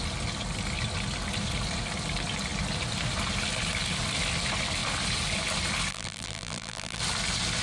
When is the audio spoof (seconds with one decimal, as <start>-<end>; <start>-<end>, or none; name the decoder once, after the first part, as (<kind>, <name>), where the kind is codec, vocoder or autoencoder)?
5.9-7.0 (vocoder, BigVGAN v2)